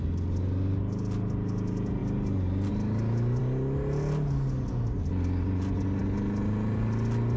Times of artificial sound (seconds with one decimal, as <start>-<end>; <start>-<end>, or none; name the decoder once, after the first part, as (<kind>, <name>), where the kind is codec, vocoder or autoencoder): none